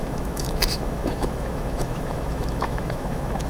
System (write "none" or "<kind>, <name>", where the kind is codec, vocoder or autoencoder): autoencoder, DAC-VAE